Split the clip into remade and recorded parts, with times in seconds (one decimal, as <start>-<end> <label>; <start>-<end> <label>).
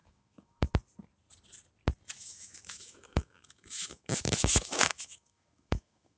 0.0-0.7 remade; 0.7-2.2 recorded; 2.2-6.2 remade